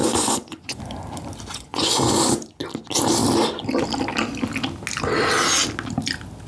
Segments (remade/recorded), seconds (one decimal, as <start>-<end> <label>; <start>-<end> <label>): 0.0-0.8 remade; 0.8-1.5 recorded; 1.5-2.3 remade; 2.3-6.5 recorded